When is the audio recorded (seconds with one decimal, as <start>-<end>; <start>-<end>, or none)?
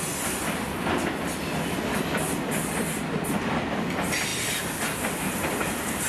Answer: 0.0-6.1